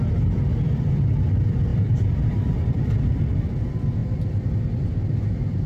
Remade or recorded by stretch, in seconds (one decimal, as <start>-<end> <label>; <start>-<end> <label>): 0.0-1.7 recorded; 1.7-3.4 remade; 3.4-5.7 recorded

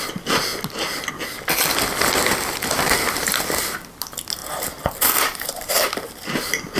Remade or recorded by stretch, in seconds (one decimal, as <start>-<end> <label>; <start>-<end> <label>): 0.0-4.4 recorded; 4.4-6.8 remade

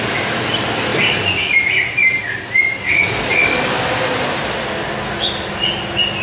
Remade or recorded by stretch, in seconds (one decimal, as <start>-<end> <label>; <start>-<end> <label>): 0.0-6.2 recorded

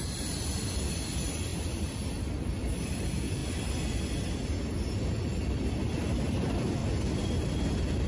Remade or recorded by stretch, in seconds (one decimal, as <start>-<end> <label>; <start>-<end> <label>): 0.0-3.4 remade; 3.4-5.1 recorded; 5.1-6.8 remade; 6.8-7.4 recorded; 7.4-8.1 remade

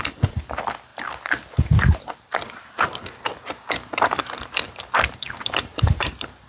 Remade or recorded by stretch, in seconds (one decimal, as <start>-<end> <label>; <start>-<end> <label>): 0.0-6.5 remade

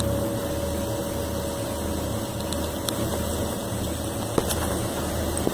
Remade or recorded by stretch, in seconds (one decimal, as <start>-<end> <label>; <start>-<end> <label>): 0.0-5.5 recorded

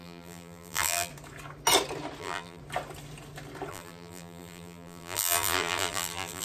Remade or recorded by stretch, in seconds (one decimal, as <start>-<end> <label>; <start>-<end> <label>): 0.0-1.1 remade; 1.1-2.2 recorded; 2.2-2.6 remade; 2.6-3.7 recorded; 3.7-6.4 remade